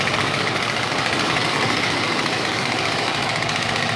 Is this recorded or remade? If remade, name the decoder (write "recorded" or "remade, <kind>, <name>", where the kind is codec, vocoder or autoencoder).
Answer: remade, codec, DAC